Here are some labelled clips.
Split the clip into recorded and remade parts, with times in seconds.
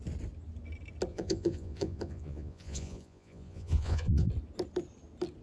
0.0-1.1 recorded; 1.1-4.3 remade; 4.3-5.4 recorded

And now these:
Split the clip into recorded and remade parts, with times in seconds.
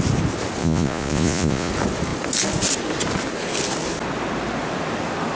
0.0-0.6 recorded; 0.6-1.7 remade; 1.7-5.4 recorded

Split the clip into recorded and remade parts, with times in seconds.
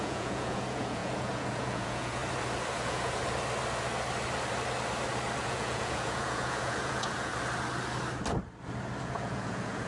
0.0-2.2 remade; 2.2-2.7 recorded; 2.7-3.2 remade; 3.2-5.4 recorded; 5.4-7.3 remade; 7.3-9.0 recorded; 9.0-9.9 remade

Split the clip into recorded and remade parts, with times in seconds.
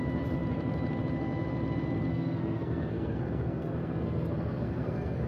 0.0-2.1 recorded; 2.1-5.3 remade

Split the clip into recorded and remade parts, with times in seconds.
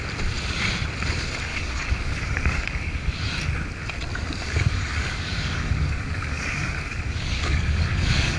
0.0-1.5 recorded; 1.5-3.3 remade; 3.3-4.1 recorded; 4.1-8.4 remade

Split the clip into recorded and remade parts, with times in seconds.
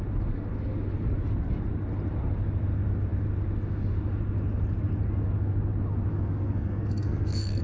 0.0-6.1 recorded; 6.1-7.6 remade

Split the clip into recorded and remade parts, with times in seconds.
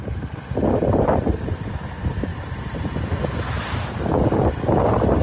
0.0-5.2 recorded